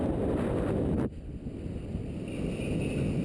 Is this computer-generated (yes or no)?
no